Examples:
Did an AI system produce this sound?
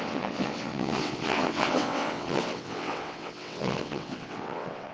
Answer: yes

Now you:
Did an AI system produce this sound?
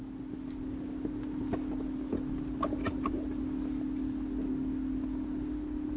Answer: no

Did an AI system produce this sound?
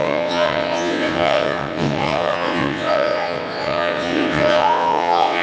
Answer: yes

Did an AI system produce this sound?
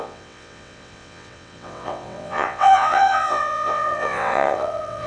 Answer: yes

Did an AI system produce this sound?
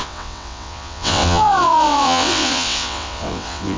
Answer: yes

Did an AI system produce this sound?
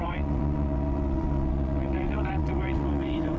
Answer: yes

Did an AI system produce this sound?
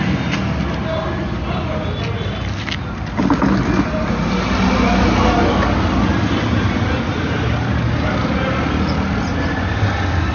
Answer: no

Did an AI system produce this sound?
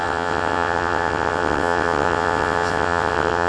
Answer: yes